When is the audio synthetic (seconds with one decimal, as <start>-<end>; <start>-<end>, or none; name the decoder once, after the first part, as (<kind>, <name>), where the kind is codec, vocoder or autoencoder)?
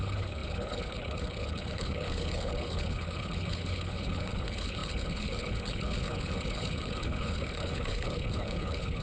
0.0-9.0 (codec, HILCodec)